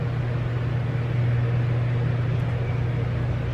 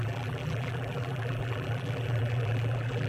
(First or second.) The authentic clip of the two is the first